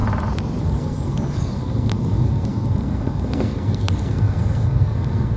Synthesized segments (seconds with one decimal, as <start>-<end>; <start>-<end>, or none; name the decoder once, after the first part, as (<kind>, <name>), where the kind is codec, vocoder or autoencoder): 0.6-5.4 (codec, SNAC)